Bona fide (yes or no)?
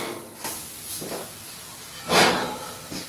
yes